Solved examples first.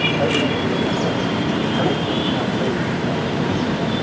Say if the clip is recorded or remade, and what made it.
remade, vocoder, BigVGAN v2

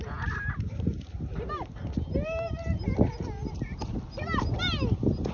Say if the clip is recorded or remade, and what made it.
recorded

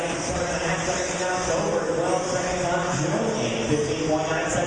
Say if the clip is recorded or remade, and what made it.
recorded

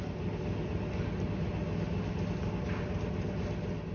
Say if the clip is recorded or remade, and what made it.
recorded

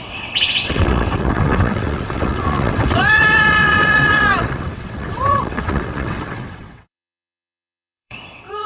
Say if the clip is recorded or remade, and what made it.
remade, vocoder, WaveNeXt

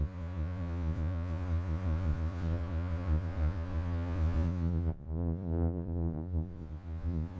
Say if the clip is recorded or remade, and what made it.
remade, vocoder, Vocos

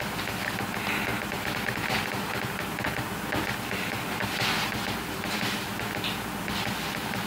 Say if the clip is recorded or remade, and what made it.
recorded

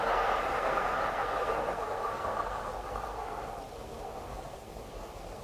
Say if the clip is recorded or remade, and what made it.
remade, codec, SNAC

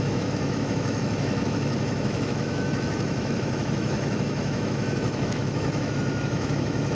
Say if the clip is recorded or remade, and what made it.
remade, autoencoder, DAC-VAE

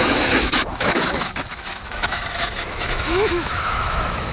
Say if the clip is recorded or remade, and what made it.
remade, autoencoder, DAC-VAE